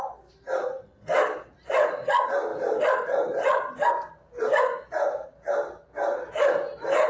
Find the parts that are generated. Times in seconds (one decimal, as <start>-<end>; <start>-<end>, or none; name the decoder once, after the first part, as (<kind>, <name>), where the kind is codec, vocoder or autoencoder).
2.5-3.9 (vocoder, BigVGAN v2)